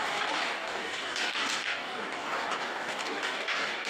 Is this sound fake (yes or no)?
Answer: yes